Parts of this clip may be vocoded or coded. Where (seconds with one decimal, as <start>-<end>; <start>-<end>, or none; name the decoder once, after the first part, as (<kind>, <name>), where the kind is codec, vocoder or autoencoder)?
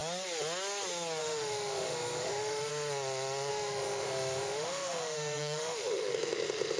1.2-2.7 (autoencoder, DAC-VAE); 3.5-6.8